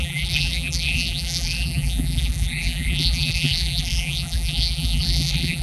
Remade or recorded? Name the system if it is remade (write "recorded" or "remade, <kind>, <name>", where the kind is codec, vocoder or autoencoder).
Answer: remade, vocoder, BigVGAN v2